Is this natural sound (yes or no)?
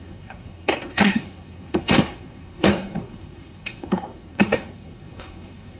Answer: no